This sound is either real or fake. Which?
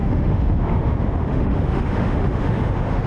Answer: fake